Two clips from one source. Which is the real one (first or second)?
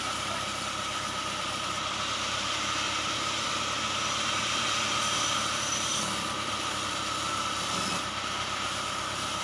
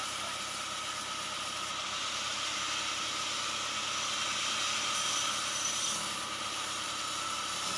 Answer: second